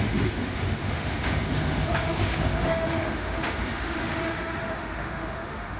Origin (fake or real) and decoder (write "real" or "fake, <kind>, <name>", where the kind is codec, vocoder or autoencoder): fake, autoencoder, DAC-VAE